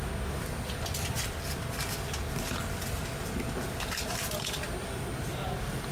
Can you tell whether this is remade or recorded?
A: recorded